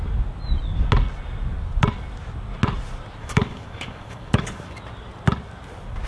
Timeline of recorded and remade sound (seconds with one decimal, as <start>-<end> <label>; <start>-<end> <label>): 0.0-3.2 recorded; 3.2-4.8 remade; 4.8-6.1 recorded